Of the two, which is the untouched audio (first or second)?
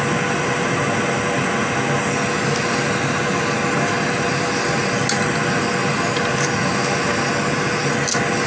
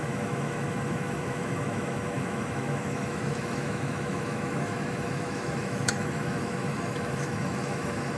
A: first